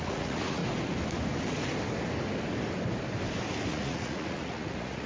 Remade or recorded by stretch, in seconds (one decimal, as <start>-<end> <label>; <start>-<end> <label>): 0.0-0.6 remade; 0.6-3.7 recorded; 3.7-5.1 remade